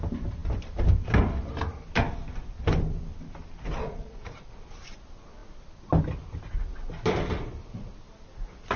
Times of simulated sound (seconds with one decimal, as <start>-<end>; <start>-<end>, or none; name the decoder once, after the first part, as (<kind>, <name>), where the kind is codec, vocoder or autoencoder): 3.8-4.5 (vocoder, Vocos)